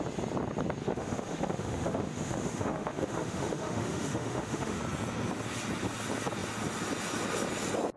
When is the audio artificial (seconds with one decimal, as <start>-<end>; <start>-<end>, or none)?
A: 0.8-4.8